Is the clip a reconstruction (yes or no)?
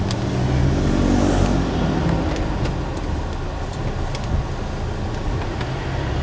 no